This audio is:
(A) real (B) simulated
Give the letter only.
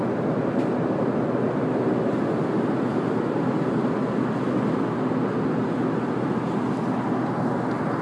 A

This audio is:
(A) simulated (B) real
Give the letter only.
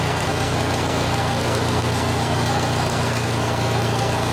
A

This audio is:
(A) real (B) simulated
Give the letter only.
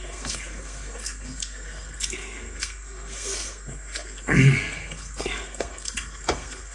B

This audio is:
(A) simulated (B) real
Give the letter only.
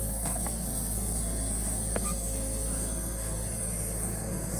A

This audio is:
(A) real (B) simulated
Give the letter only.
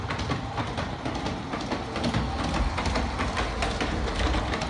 A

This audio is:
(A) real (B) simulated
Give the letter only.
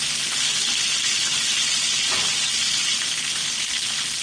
A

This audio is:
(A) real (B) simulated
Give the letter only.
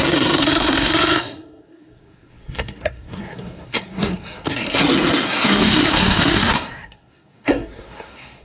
B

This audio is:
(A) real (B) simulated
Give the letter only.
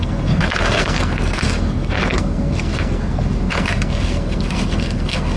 B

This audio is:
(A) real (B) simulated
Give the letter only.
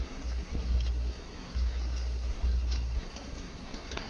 B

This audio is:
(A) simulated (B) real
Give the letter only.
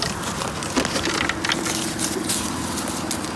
B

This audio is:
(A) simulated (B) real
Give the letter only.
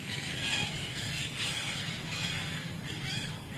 A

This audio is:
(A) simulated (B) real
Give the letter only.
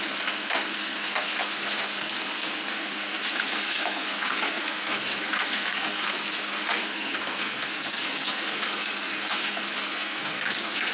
A